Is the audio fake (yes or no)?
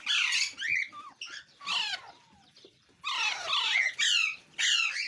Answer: no